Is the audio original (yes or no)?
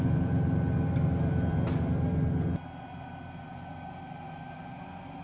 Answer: yes